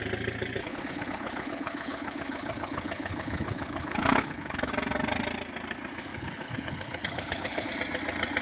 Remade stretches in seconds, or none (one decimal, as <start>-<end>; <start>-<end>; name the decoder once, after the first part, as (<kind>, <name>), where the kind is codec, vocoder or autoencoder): 0.6-4.7 (codec, HILCodec); 6.1-7.7